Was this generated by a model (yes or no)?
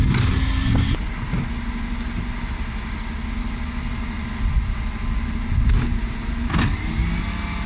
no